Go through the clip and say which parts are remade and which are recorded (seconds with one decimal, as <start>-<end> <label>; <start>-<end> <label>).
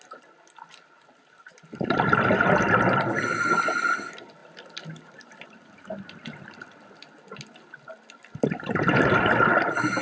0.0-10.0 recorded